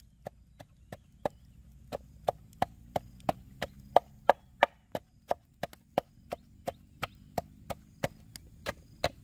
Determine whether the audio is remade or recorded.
recorded